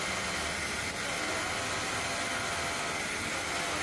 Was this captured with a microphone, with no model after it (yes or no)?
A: yes